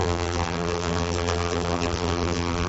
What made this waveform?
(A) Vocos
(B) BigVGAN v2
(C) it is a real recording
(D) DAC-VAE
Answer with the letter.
B